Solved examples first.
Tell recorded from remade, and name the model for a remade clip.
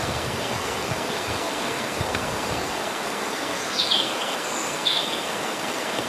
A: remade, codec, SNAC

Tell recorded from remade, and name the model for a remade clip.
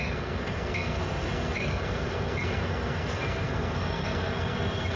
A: remade, codec, SNAC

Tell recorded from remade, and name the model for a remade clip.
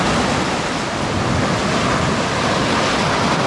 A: recorded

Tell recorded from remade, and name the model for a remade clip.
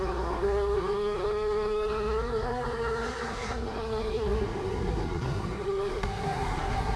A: remade, codec, SNAC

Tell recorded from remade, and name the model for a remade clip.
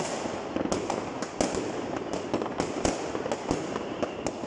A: recorded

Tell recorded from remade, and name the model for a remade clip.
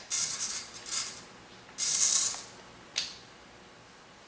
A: recorded